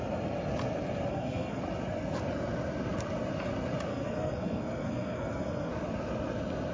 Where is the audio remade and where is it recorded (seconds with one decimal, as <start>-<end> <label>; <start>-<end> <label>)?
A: 0.0-1.1 recorded; 1.1-1.6 remade; 1.6-3.9 recorded; 3.9-5.7 remade; 5.7-6.7 recorded